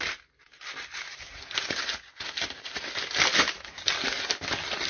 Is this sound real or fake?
real